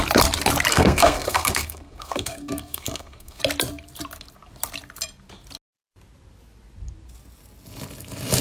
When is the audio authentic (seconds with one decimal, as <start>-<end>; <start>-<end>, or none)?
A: 0.0-0.7; 3.4-8.4

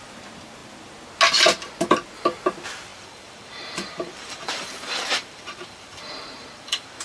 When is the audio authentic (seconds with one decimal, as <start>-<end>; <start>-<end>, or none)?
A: 0.0-2.9